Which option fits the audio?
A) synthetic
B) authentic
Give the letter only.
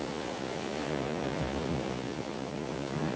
A